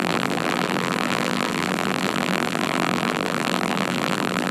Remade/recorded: remade